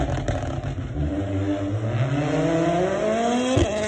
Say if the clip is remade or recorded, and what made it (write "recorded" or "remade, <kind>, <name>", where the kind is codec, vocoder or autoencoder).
recorded